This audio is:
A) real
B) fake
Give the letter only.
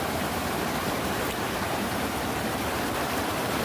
B